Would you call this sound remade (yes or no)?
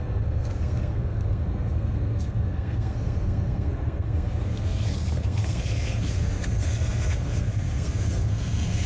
yes